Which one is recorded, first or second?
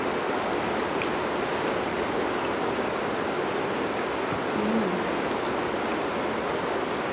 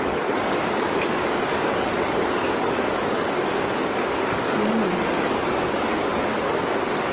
first